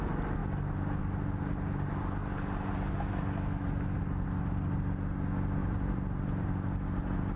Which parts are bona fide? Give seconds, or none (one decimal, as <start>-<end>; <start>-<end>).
0.0-5.6; 6.5-7.4